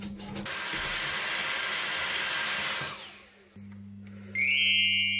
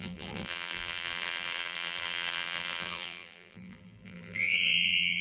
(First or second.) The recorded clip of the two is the first